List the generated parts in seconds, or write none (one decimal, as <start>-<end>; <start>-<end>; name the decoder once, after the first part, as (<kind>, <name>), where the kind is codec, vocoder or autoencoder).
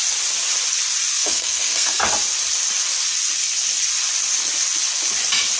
1.1-2.0 (codec, SNAC)